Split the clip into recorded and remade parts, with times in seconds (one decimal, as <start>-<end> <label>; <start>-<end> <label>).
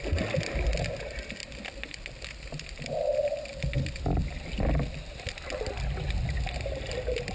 0.0-7.3 recorded